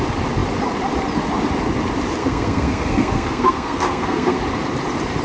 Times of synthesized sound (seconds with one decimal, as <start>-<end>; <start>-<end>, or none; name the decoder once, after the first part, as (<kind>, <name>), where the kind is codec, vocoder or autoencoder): 2.2-4.4 (codec, SNAC)